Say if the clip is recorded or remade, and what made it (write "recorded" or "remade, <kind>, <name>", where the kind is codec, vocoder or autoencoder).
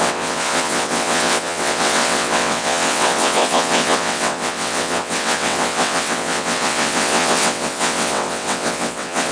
remade, vocoder, WaveNeXt